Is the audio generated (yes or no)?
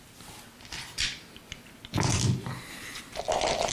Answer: no